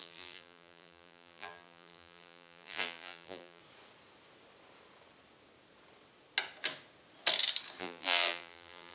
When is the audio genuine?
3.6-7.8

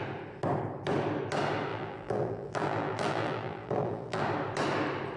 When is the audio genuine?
0.0-1.7; 4.2-5.2

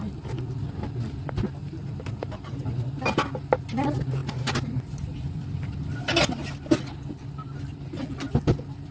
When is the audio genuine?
0.0-1.6; 3.0-4.2; 4.8-8.9